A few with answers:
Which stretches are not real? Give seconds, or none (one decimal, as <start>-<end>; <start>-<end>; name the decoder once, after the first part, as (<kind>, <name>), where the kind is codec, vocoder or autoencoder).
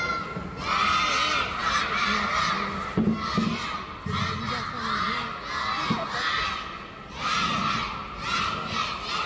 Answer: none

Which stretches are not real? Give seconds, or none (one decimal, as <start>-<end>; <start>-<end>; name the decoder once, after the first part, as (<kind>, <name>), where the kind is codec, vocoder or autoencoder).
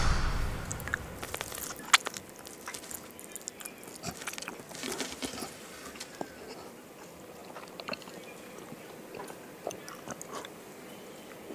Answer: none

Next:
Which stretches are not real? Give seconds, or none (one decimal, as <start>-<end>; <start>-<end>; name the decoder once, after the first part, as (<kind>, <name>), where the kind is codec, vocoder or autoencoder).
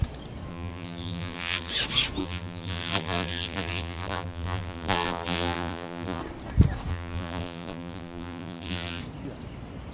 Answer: 0.5-1.7 (vocoder, BigVGAN v2); 2.2-6.2; 6.9-9.0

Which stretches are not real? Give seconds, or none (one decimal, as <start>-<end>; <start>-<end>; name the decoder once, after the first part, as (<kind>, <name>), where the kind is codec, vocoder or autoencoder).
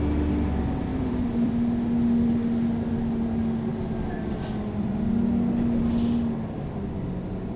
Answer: 0.9-1.5 (vocoder, BigVGAN v2)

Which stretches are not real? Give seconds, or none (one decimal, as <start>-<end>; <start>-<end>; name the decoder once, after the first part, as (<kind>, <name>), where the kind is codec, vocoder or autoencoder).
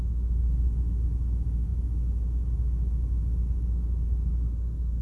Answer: none